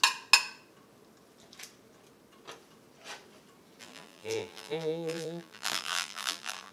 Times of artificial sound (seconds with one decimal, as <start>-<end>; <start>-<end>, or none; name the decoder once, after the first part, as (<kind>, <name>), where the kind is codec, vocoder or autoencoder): 3.8-6.7 (vocoder, BigVGAN v2)

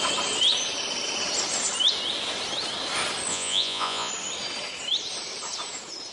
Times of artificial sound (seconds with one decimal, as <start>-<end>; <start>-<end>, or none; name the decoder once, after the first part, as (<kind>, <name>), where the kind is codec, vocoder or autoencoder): 3.3-4.1 (vocoder, Vocos)

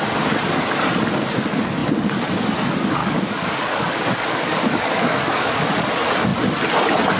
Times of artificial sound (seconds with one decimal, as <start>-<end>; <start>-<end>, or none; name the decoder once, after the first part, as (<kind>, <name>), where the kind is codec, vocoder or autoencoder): 3.0-5.8 (codec, DAC)